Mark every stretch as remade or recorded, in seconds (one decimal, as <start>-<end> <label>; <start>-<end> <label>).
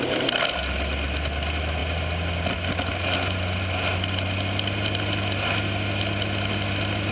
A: 0.0-7.1 recorded